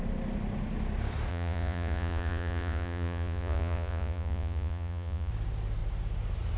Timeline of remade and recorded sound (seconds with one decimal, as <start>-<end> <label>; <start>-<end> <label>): 0.0-1.3 recorded; 1.3-5.3 remade; 5.3-6.6 recorded